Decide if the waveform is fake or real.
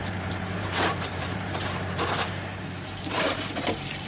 fake